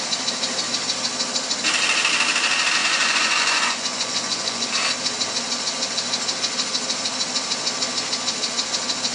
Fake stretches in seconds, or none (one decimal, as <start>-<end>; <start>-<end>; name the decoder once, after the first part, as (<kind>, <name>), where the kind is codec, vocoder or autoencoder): 2.8-4.7 (vocoder, Vocos)